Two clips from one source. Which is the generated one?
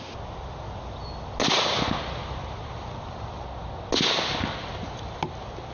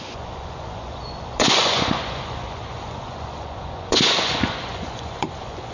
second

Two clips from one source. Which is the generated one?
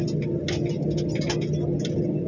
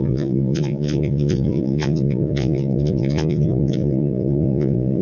second